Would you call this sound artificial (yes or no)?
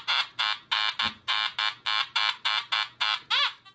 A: no